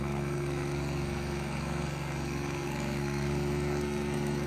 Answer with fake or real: fake